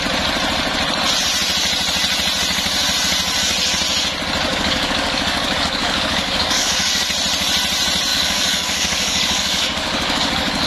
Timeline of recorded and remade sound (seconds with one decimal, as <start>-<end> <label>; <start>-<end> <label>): 0.0-4.5 recorded; 4.5-7.0 remade; 7.0-8.1 recorded; 8.1-10.7 remade